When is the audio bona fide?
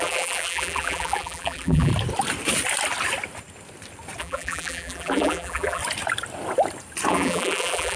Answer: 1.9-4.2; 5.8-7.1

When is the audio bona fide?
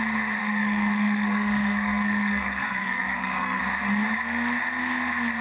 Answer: 0.0-0.4; 3.6-5.4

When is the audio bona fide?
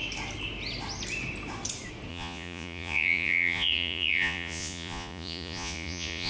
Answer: 0.0-2.1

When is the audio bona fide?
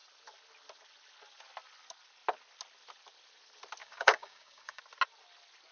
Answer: 0.0-3.8; 4.8-5.7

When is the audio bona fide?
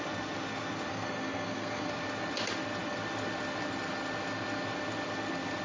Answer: 0.0-0.9; 1.9-5.6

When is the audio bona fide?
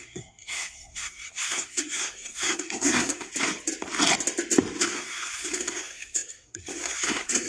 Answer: 3.3-4.8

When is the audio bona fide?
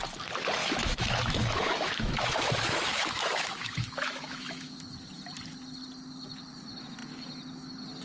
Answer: 0.0-0.6; 4.7-8.0